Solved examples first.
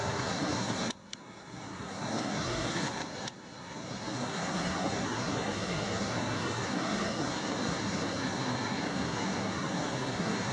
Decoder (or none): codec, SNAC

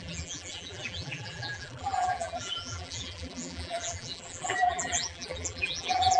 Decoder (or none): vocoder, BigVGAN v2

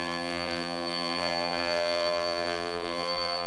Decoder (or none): vocoder, BigVGAN v2